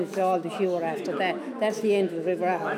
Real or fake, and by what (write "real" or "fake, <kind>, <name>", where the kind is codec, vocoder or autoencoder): fake, autoencoder, DAC-VAE